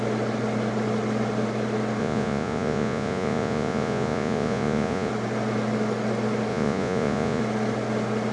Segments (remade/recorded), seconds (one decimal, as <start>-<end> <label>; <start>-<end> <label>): 0.0-2.0 recorded; 2.0-5.1 remade; 5.1-6.5 recorded; 6.5-7.4 remade; 7.4-8.3 recorded